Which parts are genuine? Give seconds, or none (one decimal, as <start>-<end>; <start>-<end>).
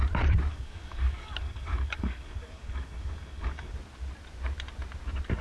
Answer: 0.0-0.5; 3.7-5.4